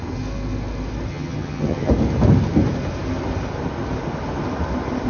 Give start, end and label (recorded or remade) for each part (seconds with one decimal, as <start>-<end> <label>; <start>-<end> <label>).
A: 0.0-1.1 recorded; 1.1-1.9 remade; 1.9-5.1 recorded